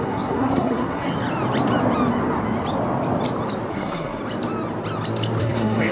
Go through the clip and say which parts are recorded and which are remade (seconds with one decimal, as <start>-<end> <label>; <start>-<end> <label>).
0.0-1.1 remade; 1.1-3.7 recorded; 3.7-4.2 remade; 4.2-5.4 recorded; 5.4-5.9 remade